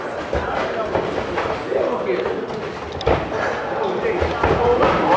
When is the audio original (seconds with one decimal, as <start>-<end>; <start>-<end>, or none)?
0.0-5.2

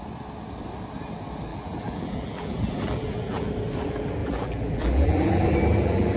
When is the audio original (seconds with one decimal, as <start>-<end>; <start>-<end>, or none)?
0.0-1.5; 3.5-4.2

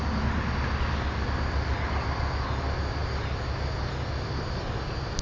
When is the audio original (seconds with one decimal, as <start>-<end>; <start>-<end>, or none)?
0.0-5.2

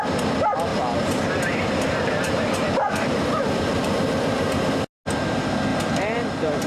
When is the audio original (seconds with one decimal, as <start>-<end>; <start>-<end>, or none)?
0.0-0.7; 4.7-5.7

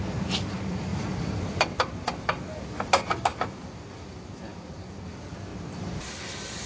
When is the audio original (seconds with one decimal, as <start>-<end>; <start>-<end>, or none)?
0.0-6.7

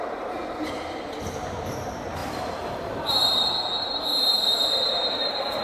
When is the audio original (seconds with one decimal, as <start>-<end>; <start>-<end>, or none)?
none

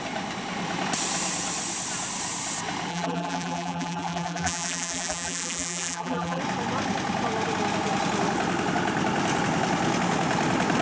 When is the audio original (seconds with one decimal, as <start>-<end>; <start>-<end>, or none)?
0.0-2.9; 6.4-10.8